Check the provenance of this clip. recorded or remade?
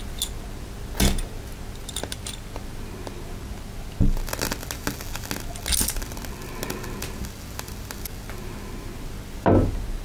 recorded